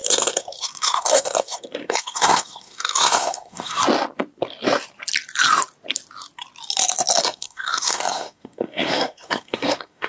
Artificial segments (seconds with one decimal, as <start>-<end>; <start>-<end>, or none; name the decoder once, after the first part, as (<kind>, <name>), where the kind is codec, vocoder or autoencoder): 0.0-3.8 (codec, SNAC); 7.2-10.1